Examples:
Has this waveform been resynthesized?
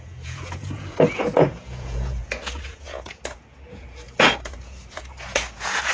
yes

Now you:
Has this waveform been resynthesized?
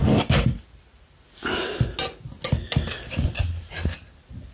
no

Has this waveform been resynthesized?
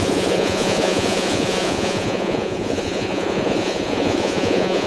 yes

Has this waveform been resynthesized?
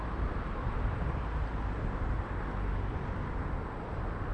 no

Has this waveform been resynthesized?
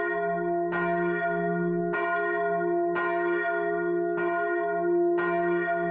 no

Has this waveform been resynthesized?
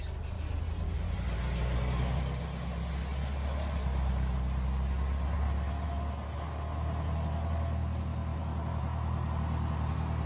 no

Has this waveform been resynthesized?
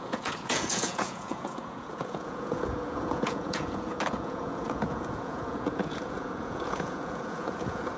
yes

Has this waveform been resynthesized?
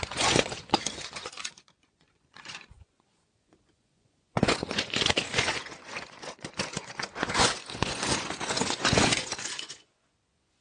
yes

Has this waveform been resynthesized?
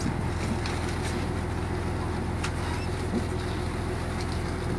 no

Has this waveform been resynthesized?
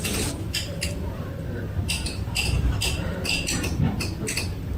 no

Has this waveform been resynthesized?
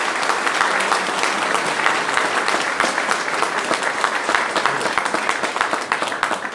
no